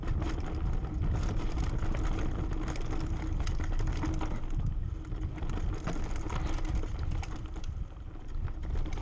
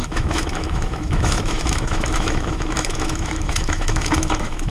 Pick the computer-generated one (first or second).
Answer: second